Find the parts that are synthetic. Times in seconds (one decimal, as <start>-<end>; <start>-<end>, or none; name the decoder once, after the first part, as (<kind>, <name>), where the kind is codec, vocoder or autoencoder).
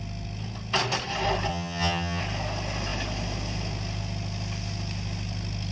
1.5-2.2 (vocoder, HiFi-GAN)